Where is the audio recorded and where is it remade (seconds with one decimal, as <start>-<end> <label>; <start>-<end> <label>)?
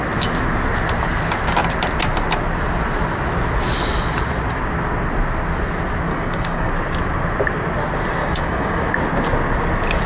0.0-6.1 recorded; 6.1-6.7 remade; 6.7-8.2 recorded; 8.2-8.9 remade; 8.9-10.1 recorded